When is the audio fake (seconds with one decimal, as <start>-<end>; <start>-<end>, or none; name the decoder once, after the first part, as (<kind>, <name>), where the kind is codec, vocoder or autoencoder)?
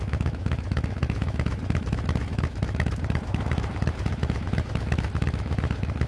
0.0-6.1 (autoencoder, DAC-VAE)